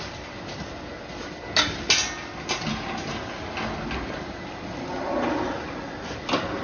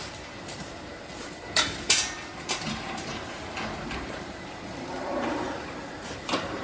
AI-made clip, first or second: second